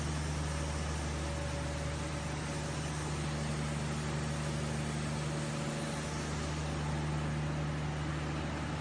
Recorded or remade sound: recorded